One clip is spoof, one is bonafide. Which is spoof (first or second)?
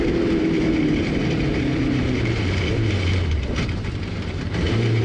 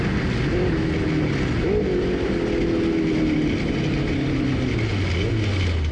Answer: first